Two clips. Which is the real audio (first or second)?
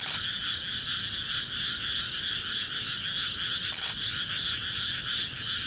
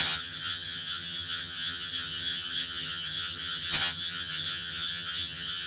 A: first